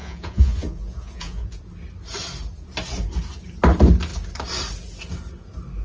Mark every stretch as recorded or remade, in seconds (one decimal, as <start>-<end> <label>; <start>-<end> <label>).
0.0-1.6 remade; 1.6-5.8 recorded